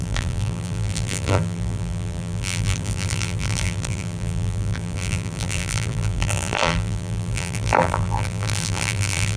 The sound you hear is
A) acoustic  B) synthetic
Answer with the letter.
B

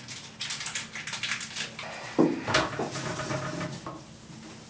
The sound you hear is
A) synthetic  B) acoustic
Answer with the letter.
B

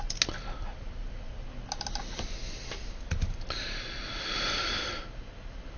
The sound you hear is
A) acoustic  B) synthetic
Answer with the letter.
A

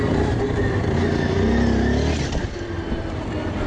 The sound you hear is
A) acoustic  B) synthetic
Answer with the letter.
A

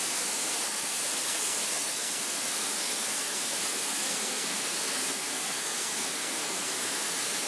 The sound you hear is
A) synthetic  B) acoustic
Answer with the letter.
A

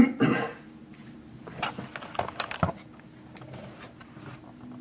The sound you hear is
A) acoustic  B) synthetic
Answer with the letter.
A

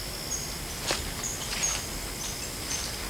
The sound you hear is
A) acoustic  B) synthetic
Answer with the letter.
A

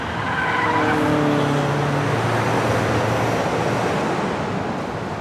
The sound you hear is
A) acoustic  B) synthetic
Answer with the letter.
A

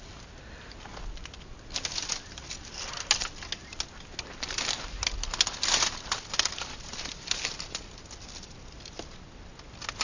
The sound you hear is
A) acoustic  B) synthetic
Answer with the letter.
A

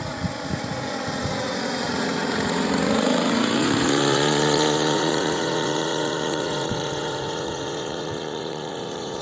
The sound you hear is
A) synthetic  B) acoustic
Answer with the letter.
A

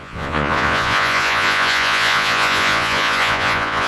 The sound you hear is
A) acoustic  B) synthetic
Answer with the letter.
B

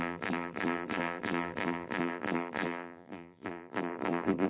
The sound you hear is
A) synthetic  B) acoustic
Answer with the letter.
A